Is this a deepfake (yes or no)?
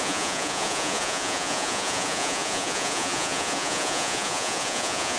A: yes